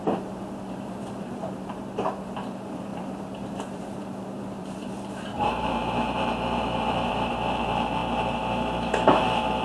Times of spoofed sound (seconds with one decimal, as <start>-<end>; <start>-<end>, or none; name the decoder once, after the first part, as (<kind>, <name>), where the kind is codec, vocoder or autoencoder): 0.0-8.0 (vocoder, BigVGAN v2); 9.2-9.6

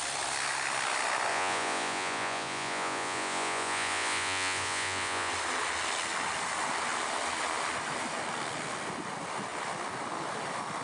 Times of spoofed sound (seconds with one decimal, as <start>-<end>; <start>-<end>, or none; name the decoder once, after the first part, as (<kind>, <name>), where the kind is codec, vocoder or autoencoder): 1.3-5.3 (vocoder, Vocos)

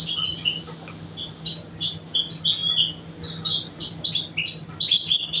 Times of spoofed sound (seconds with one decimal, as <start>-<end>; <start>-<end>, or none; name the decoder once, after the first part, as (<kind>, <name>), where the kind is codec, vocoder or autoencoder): none

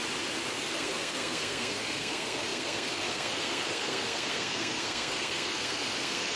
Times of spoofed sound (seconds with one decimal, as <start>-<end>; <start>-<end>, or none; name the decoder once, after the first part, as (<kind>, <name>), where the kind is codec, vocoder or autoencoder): 0.5-6.4 (codec, SNAC)

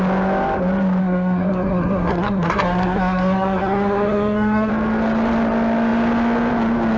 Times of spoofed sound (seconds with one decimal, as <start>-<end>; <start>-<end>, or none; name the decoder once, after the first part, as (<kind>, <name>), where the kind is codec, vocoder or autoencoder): 1.0-4.7 (codec, SNAC)